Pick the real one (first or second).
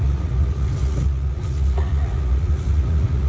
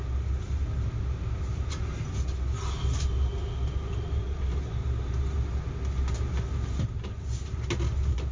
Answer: second